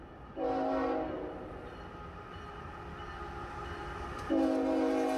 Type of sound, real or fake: real